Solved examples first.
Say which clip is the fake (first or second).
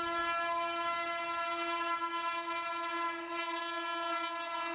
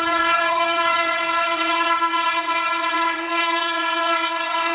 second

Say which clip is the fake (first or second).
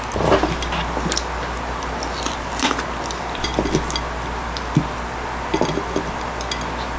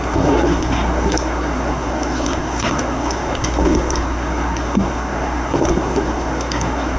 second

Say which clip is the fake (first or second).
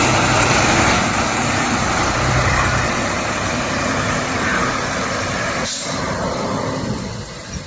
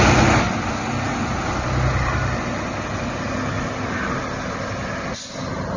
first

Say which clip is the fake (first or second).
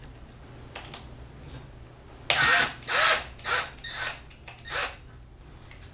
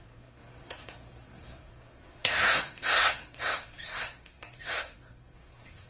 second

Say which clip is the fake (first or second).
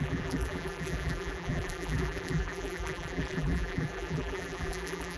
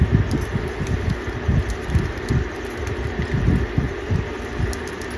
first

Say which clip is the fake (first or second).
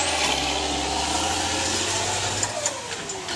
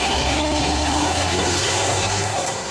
second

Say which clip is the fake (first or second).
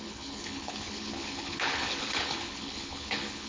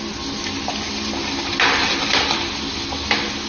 first